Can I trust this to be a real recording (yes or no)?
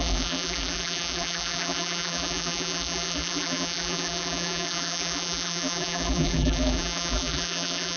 no